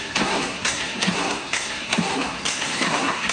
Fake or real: fake